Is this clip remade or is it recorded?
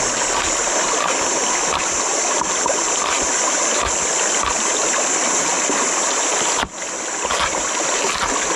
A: recorded